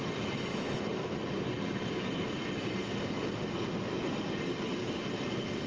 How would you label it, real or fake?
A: real